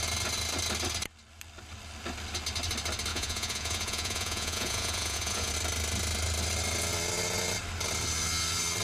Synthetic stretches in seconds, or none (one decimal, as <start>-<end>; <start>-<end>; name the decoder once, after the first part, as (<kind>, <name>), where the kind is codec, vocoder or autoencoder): 3.1-5.5 (vocoder, Vocos)